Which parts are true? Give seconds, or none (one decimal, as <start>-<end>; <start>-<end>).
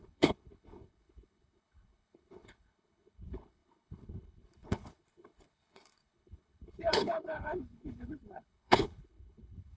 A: none